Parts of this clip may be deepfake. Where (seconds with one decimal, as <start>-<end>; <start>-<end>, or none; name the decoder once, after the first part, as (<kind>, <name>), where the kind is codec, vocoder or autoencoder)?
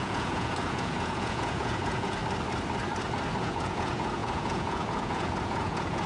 0.0-2.2 (vocoder, Vocos); 3.4-6.1